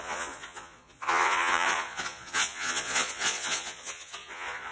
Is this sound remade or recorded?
remade